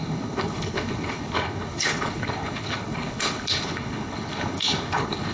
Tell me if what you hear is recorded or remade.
remade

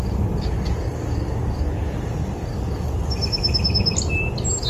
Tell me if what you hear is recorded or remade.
recorded